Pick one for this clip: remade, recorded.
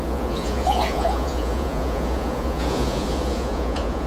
remade